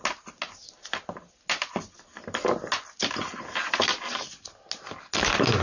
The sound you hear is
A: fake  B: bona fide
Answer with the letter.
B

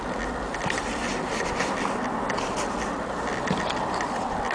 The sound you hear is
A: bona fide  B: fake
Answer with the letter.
A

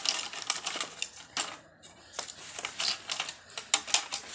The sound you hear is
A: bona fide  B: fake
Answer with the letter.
A